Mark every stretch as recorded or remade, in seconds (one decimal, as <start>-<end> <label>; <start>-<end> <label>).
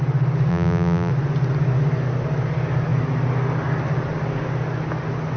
0.0-0.5 recorded; 0.5-1.1 remade; 1.1-5.4 recorded